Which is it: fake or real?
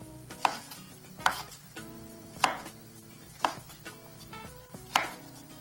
fake